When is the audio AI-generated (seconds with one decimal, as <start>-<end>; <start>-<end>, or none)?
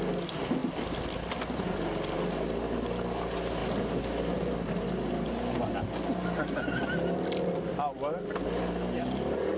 none